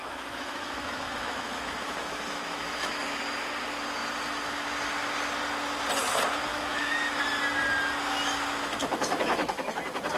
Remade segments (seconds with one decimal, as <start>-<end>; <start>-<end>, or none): 0.0-3.0; 6.5-7.2; 8.8-9.7